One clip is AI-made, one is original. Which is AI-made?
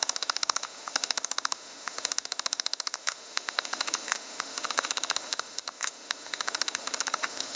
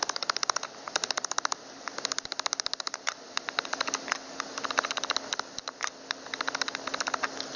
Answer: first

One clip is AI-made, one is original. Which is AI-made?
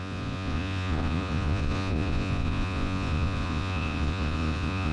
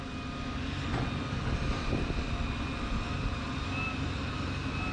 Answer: first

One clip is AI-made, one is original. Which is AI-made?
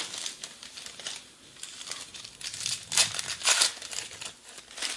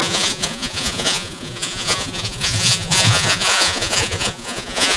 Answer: second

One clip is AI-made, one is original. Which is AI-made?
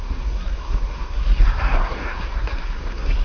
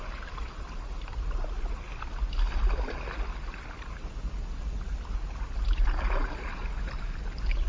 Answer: first